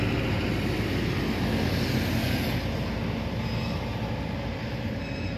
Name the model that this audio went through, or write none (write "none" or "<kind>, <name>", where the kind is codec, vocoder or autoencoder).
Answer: none